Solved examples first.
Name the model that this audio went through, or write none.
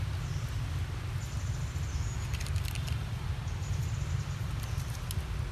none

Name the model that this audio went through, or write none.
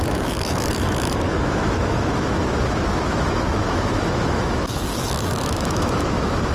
autoencoder, DAC-VAE